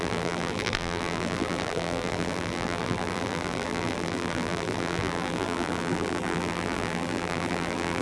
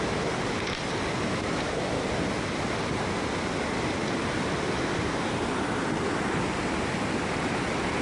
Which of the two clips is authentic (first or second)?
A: second